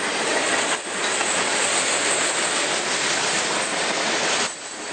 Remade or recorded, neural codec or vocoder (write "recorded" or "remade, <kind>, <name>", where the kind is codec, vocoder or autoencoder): recorded